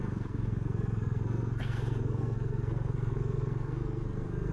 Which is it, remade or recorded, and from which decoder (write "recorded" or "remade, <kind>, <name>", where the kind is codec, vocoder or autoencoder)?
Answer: remade, codec, SNAC